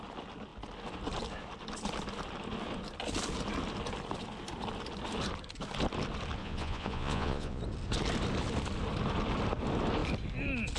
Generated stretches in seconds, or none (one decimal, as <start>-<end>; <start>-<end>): 6.4-7.6